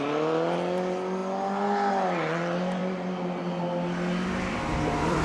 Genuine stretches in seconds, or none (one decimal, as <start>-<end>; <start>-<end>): 1.2-1.9